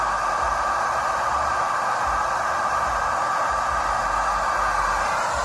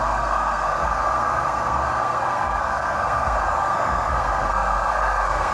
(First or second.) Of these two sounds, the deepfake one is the second